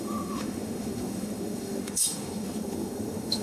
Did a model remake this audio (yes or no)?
yes